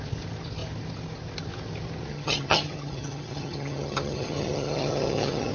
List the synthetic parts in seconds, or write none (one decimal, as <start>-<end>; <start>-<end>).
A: 2.1-5.5